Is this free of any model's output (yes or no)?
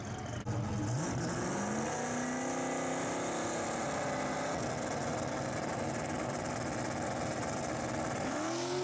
yes